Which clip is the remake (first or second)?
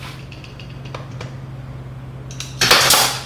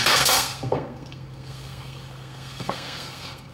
second